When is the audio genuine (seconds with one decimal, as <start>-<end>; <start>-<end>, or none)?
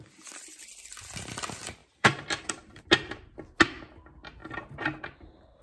0.0-1.8; 2.8-5.6